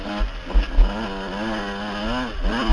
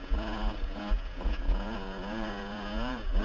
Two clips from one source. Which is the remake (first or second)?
second